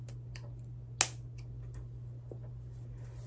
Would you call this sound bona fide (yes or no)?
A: yes